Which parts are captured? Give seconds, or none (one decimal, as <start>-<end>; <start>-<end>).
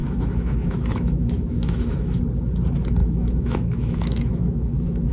2.2-3.0